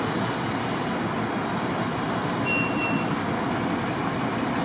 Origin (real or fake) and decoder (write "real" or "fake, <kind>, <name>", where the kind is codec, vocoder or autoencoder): real